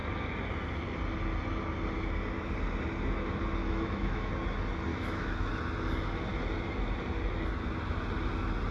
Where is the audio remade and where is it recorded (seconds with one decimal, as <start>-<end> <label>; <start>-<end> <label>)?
0.0-3.6 recorded; 3.6-4.3 remade; 4.3-4.9 recorded; 4.9-5.5 remade; 5.5-8.7 recorded